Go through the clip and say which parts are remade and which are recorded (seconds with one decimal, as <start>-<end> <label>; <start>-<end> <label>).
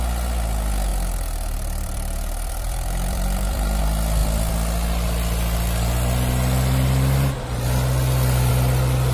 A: 0.0-0.9 recorded; 0.9-3.8 remade; 3.8-9.1 recorded